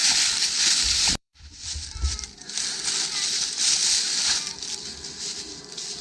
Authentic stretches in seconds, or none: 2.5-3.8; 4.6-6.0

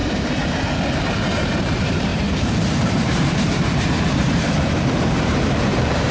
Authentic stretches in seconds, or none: 0.0-1.0

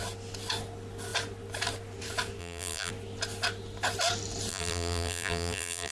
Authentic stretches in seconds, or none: 0.0-2.4; 2.9-4.5

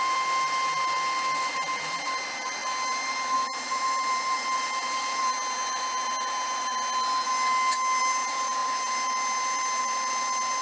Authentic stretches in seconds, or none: 6.7-8.0

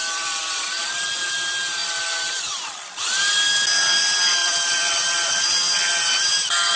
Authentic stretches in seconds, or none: 1.3-4.4; 5.3-6.8

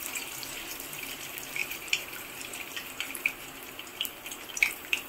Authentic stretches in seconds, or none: none